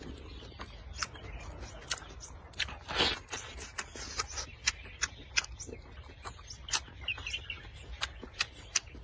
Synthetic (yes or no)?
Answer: no